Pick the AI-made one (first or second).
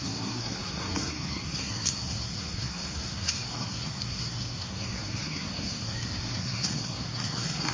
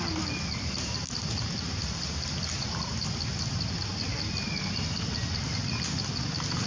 first